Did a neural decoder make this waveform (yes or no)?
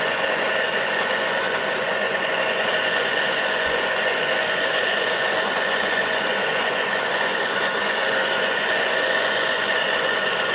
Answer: yes